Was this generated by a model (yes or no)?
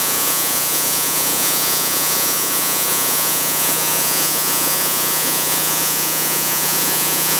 yes